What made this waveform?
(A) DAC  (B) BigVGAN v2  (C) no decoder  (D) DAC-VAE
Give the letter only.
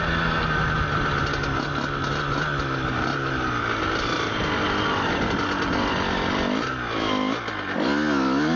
C